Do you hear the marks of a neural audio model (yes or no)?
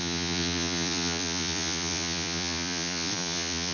yes